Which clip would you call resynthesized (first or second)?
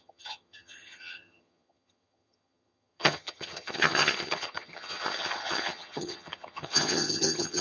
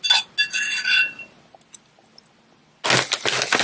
first